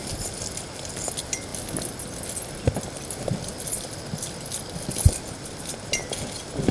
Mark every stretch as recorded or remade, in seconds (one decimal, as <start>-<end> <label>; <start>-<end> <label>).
0.0-6.7 recorded